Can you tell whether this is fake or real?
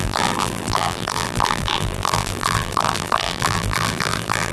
fake